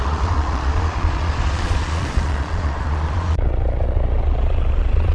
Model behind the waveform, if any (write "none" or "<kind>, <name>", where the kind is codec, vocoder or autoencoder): vocoder, Vocos